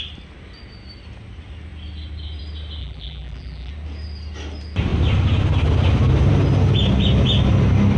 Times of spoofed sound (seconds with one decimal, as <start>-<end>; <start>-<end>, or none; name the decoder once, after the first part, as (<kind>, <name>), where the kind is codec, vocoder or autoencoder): 2.8-3.7 (vocoder, BigVGAN v2)